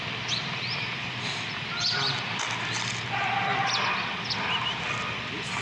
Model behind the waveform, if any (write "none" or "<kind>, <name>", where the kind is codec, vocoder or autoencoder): none